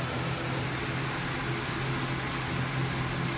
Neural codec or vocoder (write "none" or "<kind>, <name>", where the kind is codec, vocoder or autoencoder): none